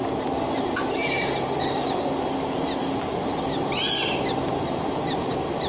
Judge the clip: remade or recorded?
recorded